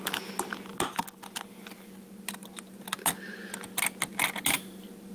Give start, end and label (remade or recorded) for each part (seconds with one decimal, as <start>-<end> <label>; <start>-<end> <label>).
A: 0.0-5.1 recorded